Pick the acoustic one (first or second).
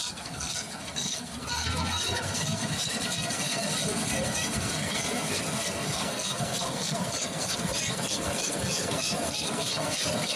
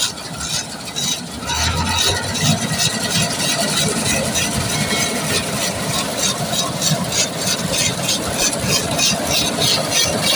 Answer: second